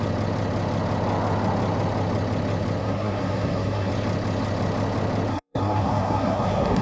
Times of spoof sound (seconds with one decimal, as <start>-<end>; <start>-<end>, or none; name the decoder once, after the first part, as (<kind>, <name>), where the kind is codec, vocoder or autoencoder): 2.8-3.9 (codec, SNAC); 5.3-6.8